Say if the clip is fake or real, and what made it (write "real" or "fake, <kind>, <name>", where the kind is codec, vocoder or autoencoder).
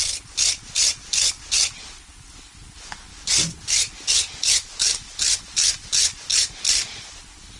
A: real